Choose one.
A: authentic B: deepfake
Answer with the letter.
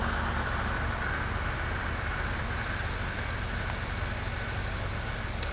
A